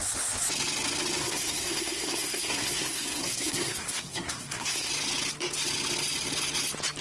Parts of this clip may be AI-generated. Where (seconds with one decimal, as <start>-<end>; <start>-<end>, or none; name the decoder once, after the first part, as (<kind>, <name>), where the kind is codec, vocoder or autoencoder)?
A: 1.2-4.9 (codec, SNAC)